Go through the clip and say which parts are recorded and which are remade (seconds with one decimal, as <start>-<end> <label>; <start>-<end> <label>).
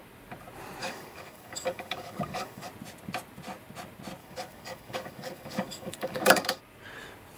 0.0-0.8 recorded; 0.8-2.7 remade; 2.7-4.2 recorded; 4.2-6.6 remade; 6.6-7.4 recorded